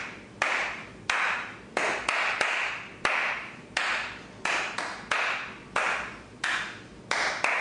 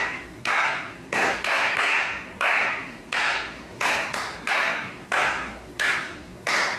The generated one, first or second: second